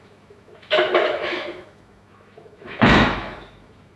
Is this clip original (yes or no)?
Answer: no